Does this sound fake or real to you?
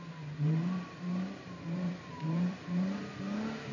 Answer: fake